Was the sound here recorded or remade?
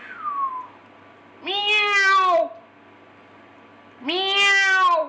recorded